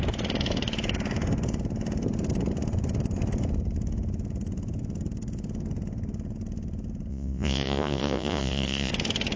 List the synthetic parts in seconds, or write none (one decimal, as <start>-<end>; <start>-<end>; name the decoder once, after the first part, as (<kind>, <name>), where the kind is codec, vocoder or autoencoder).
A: 7.1-8.9 (vocoder, Vocos)